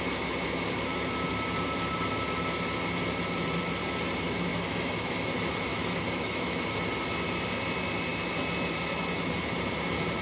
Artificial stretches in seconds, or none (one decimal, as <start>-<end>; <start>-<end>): 4.5-5.3; 5.7-6.6